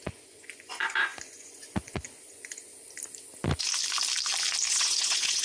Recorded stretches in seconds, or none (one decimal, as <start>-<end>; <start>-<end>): 2.7-4.7